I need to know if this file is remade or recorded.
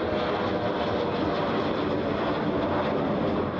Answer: remade